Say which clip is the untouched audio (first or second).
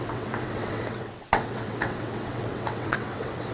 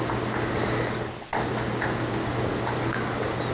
second